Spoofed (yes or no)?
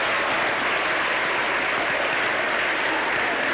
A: no